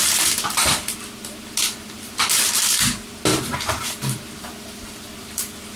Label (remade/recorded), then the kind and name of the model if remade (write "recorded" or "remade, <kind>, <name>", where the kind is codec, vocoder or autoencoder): remade, vocoder, BigVGAN v2